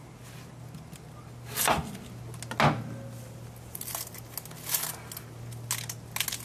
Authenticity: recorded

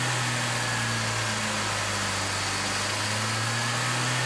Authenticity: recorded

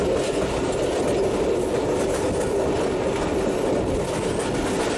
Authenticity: recorded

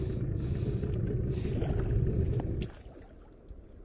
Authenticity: recorded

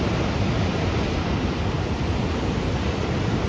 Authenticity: recorded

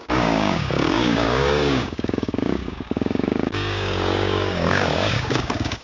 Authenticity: remade